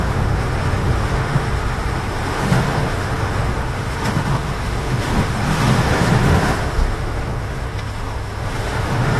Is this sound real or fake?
fake